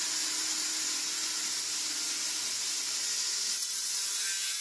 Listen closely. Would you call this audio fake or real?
real